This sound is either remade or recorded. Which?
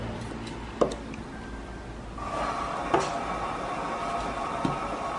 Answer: recorded